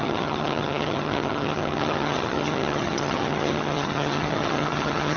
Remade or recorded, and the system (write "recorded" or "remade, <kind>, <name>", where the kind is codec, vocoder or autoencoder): remade, vocoder, HiFi-GAN